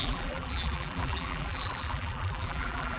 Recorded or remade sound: remade